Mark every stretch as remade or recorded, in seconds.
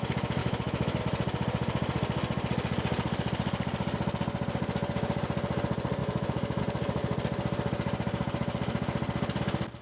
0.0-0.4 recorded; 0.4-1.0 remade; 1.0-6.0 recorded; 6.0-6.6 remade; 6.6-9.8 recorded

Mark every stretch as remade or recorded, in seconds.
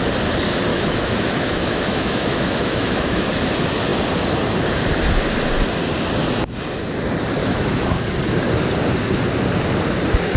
0.0-0.7 recorded; 0.7-3.3 remade; 3.3-7.4 recorded; 7.4-8.0 remade; 8.0-10.4 recorded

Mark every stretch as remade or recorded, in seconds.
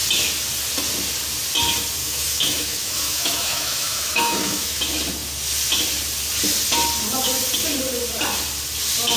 0.0-2.0 recorded; 2.0-4.8 remade; 4.8-9.2 recorded